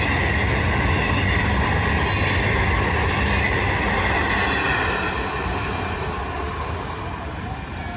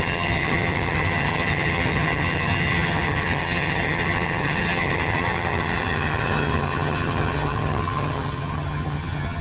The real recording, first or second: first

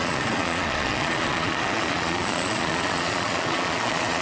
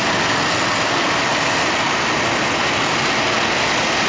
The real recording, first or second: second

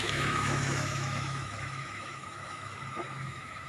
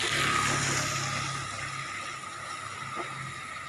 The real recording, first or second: second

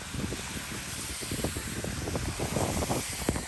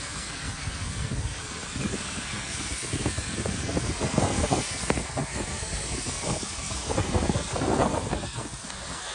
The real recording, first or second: first